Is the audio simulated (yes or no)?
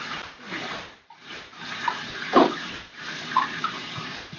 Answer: yes